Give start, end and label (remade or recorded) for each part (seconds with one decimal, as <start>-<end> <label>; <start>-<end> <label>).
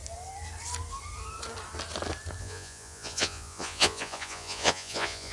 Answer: 0.0-2.4 recorded; 2.4-5.3 remade